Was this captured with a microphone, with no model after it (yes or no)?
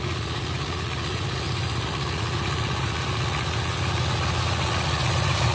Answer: no